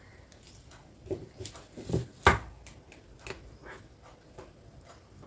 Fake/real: real